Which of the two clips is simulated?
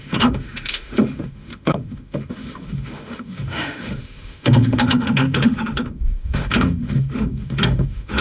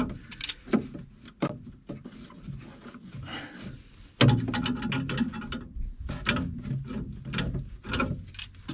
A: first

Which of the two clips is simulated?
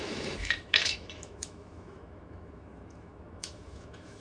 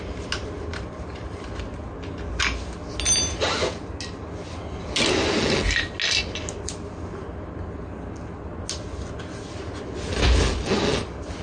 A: first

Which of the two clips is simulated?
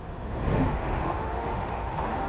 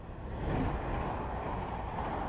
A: first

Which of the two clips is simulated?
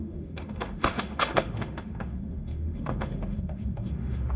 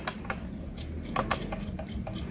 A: first